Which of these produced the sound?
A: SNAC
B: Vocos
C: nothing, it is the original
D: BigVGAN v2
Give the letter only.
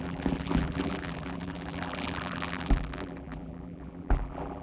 D